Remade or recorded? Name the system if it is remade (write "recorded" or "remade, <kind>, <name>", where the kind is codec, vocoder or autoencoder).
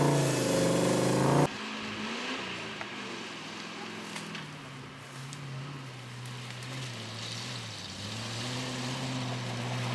recorded